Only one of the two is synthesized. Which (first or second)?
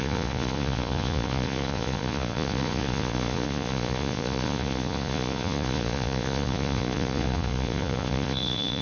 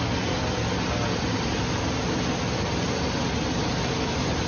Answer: first